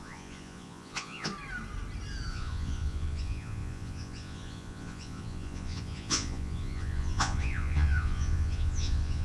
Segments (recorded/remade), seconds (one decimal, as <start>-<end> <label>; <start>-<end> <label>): 0.0-1.3 remade; 1.3-2.3 recorded; 2.3-9.2 remade